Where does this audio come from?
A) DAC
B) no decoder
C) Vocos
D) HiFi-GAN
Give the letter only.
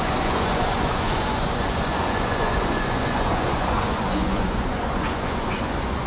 C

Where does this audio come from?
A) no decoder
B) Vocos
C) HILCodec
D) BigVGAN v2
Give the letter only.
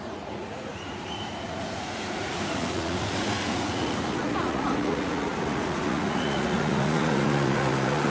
B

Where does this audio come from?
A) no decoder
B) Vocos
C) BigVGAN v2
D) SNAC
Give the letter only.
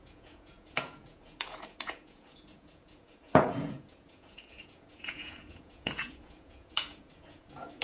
B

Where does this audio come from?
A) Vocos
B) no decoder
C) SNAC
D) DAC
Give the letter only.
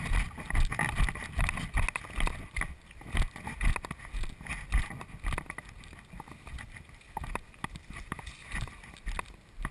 B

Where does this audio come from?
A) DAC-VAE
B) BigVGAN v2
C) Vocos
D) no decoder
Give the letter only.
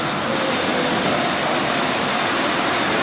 D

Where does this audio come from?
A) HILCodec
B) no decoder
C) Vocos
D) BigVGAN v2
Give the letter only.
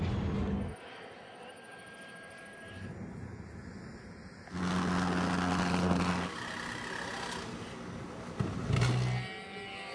B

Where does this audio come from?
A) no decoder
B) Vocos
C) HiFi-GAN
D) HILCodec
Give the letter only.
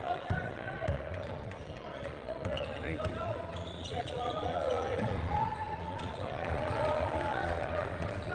B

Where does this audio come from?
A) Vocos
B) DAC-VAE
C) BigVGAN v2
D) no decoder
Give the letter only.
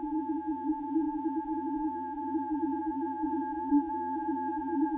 A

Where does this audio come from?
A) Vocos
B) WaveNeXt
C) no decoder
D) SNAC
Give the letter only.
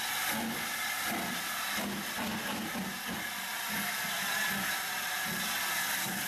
C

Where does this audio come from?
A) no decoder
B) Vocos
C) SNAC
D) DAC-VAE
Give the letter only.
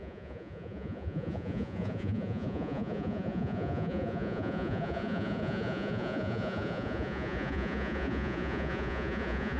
B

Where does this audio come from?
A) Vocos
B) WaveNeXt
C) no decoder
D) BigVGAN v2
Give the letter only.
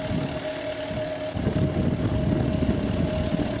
C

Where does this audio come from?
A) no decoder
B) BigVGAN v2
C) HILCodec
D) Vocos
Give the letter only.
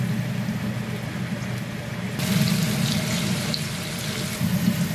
A